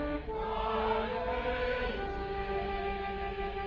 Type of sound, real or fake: real